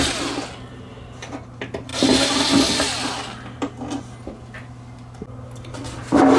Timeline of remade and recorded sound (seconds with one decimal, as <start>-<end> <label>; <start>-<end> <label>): 0.0-6.4 recorded